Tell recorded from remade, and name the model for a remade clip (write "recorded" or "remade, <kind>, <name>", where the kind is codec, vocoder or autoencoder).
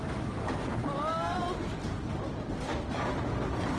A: recorded